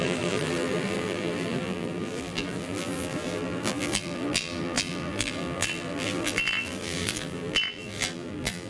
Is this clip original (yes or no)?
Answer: no